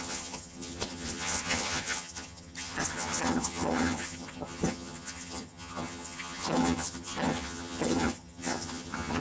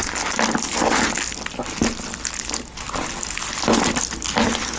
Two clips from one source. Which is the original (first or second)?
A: second